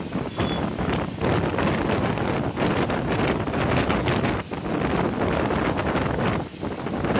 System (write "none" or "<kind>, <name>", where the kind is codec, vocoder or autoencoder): none